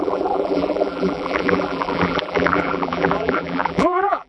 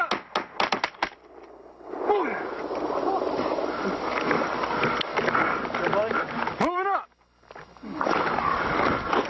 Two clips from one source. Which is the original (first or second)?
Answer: second